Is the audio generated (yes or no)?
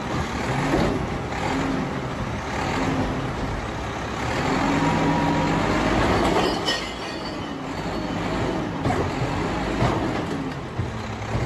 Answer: no